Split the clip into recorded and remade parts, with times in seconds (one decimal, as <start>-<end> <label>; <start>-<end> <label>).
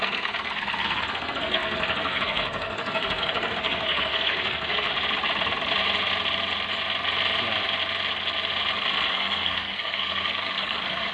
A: 0.0-4.9 remade; 4.9-9.1 recorded; 9.1-11.1 remade